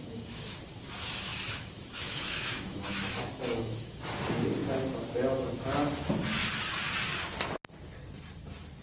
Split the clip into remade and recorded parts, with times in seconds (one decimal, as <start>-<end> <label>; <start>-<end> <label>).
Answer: 0.0-0.6 remade; 0.6-1.3 recorded; 1.3-4.0 remade; 4.0-8.8 recorded